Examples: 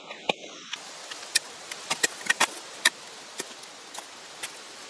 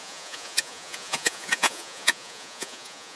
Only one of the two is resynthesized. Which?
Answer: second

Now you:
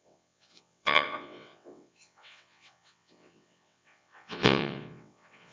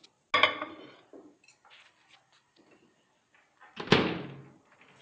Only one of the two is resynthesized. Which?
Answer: first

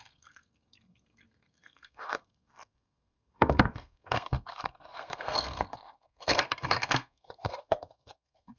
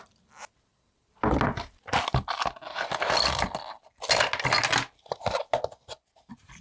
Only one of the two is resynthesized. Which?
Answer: first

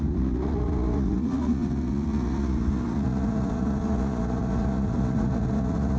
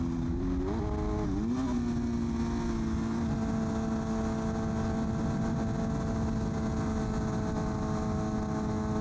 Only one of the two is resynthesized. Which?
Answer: first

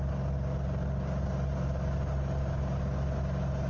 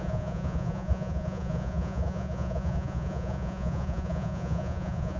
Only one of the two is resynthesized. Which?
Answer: second